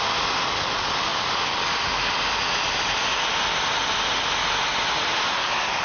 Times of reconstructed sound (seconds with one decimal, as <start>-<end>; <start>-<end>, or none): none